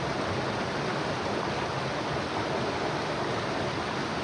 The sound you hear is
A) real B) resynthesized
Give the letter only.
A